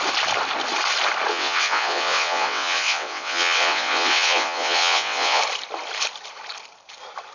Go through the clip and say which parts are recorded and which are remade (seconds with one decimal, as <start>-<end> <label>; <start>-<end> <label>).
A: 0.0-1.3 recorded; 1.3-5.4 remade; 5.4-7.3 recorded